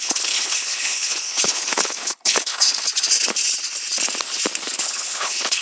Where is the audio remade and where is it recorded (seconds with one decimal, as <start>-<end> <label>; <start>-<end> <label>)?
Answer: 0.0-2.9 remade; 2.9-4.8 recorded; 4.8-5.6 remade